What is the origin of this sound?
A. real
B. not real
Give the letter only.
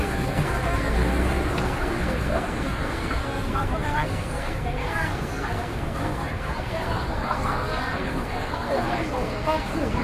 B